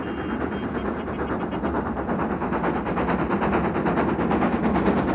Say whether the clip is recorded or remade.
recorded